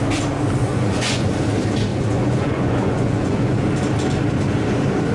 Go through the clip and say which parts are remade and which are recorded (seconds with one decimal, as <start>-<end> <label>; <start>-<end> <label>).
0.0-0.6 recorded; 0.6-1.3 remade; 1.3-1.9 recorded; 1.9-3.6 remade; 3.6-5.1 recorded